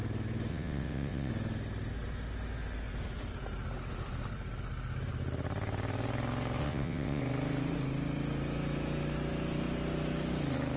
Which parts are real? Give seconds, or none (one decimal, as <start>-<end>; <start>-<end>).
0.0-0.5; 1.3-6.6; 7.2-10.8